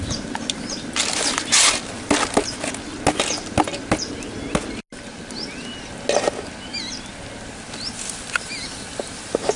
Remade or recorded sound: recorded